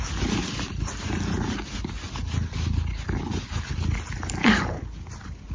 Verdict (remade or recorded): recorded